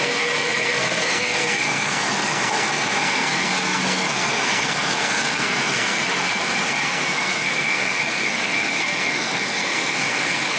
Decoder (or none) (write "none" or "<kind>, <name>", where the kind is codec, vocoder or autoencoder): codec, SNAC